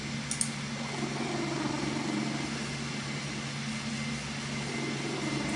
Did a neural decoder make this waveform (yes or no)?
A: no